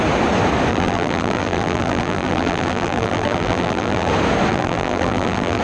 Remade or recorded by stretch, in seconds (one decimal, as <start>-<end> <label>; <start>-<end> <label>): 0.0-0.7 recorded; 0.7-4.1 remade; 4.1-4.5 recorded; 4.5-5.6 remade